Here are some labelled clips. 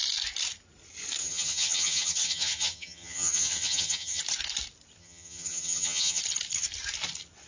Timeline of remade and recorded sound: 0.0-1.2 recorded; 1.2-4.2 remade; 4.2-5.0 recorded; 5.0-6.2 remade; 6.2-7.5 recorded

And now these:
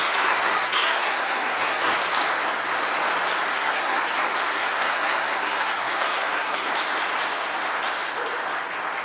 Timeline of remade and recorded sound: 0.0-1.9 remade; 1.9-3.5 recorded; 3.5-4.0 remade; 4.0-4.5 recorded; 4.5-6.7 remade; 6.7-9.0 recorded